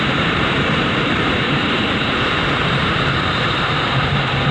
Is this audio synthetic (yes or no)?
yes